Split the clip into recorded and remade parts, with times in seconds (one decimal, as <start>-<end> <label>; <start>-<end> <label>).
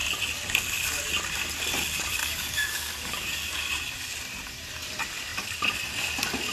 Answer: 0.0-2.2 recorded; 2.2-3.7 remade; 3.7-6.5 recorded